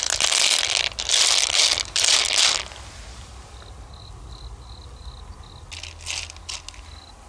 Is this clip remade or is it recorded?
recorded